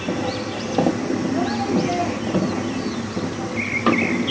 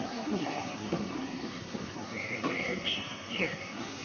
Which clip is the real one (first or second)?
first